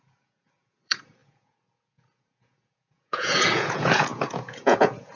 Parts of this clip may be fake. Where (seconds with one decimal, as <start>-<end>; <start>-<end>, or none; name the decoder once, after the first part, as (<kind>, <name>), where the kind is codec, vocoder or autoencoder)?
0.0-5.2 (vocoder, Vocos)